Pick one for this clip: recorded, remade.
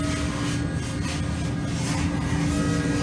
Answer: recorded